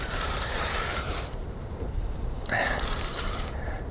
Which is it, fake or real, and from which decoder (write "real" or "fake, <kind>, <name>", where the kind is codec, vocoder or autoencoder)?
fake, vocoder, BigVGAN v2